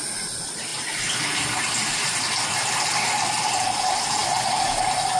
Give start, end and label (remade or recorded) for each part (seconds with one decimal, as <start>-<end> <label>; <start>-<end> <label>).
0.0-5.2 recorded